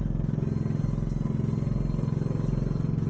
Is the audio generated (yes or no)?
no